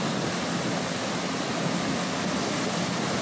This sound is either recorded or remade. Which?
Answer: recorded